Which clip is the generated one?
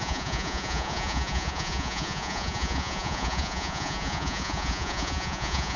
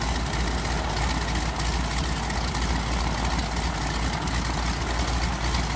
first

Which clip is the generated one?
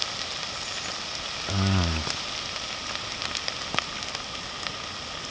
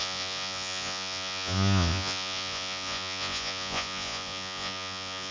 second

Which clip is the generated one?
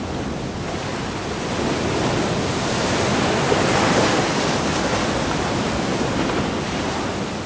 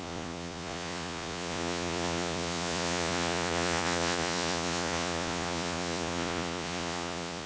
second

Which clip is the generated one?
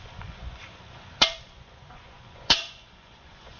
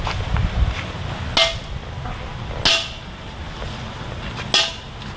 first